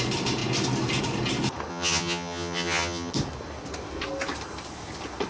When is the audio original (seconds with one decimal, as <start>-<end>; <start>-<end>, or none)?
0.0-1.7; 3.1-5.3